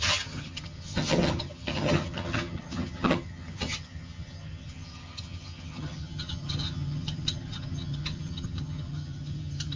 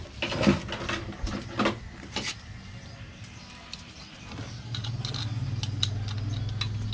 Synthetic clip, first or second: first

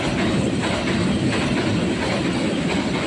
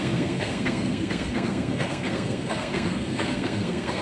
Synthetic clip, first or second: second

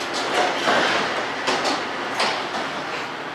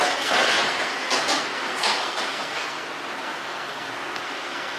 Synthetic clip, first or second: second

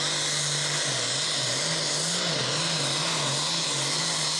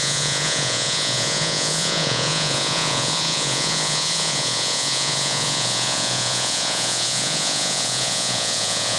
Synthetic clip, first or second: second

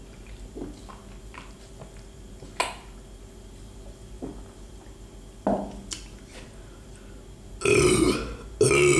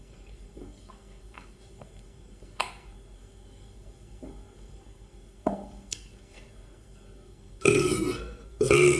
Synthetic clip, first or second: second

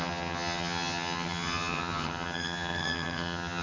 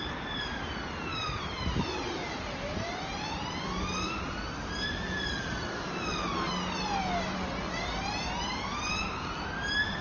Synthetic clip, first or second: first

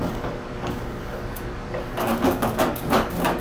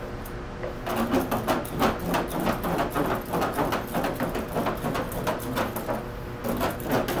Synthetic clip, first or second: first